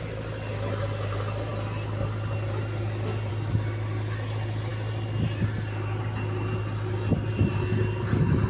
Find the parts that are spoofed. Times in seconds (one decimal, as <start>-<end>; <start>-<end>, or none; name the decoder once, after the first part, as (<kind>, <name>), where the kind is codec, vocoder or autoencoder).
none